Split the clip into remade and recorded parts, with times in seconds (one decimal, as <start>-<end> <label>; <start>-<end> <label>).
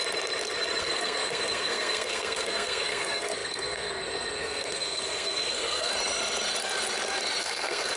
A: 0.0-0.8 recorded; 0.8-5.9 remade; 5.9-7.4 recorded; 7.4-8.0 remade